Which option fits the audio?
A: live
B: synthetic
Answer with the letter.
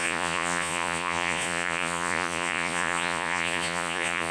B